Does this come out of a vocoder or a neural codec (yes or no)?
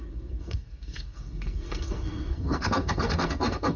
yes